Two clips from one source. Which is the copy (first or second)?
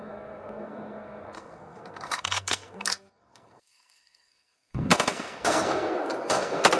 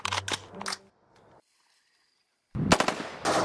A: first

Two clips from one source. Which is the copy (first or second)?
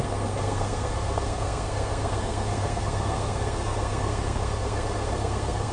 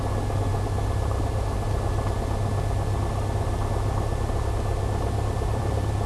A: first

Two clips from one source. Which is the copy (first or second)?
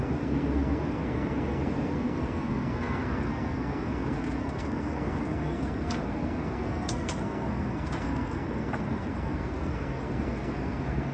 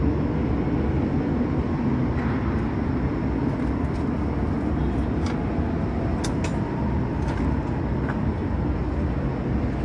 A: first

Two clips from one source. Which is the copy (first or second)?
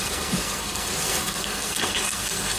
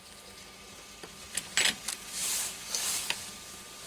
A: first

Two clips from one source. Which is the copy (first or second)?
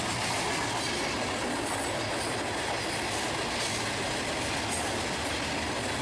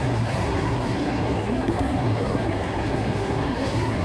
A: second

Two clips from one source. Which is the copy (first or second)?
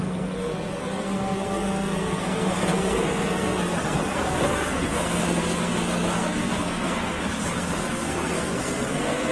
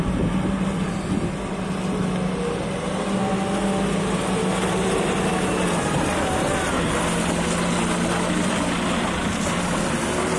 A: first